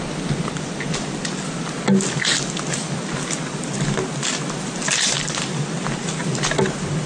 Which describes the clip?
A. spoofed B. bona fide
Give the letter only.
B